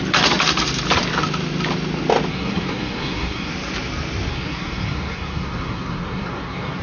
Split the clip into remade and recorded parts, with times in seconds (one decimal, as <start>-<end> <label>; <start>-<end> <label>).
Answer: 0.0-2.3 recorded; 2.3-3.5 remade; 3.5-4.3 recorded; 4.3-6.8 remade

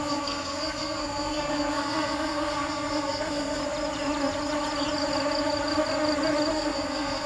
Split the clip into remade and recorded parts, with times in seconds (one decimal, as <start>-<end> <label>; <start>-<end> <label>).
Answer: 0.0-3.6 remade; 3.6-6.5 recorded; 6.5-7.3 remade

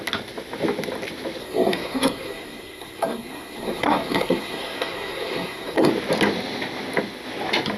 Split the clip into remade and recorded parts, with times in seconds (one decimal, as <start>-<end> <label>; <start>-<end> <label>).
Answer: 0.0-1.4 recorded; 1.4-5.9 remade; 5.9-7.8 recorded